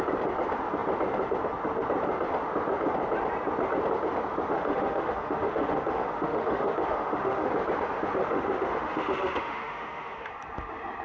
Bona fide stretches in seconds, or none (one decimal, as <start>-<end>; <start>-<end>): 0.0-4.5; 7.5-8.2; 10.3-11.0